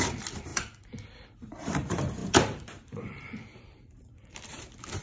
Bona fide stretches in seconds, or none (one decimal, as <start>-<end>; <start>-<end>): 0.5-1.1